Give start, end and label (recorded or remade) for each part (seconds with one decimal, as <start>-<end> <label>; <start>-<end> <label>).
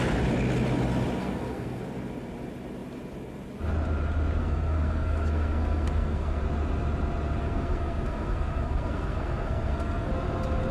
0.0-1.2 recorded; 1.2-1.8 remade; 1.8-4.4 recorded; 4.4-6.4 remade; 6.4-7.4 recorded; 7.4-10.1 remade; 10.1-10.7 recorded